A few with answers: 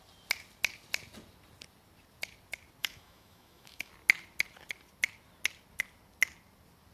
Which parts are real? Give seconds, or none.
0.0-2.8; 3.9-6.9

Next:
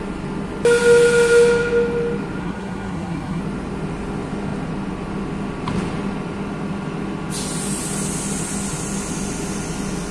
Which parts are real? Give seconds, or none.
0.0-2.4; 3.4-10.1

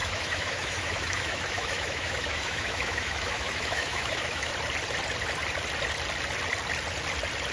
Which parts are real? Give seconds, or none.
4.5-7.5

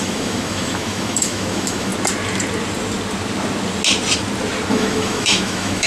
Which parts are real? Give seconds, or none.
1.9-4.7

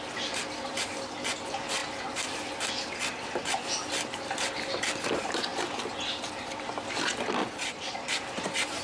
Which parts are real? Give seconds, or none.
0.0-7.4; 8.2-8.8

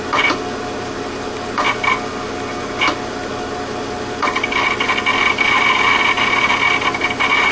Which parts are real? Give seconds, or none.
0.0-7.5

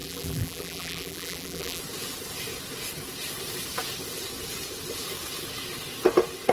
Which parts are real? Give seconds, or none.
1.8-6.5